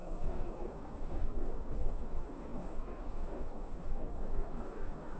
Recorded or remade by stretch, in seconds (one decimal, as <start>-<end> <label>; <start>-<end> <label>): 0.0-5.2 remade